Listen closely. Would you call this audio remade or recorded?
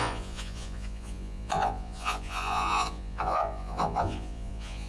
remade